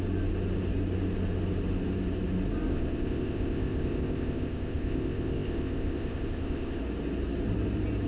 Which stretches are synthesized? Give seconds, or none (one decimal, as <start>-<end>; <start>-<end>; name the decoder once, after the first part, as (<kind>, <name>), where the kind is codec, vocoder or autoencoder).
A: 2.7-6.8 (codec, ZipCodec)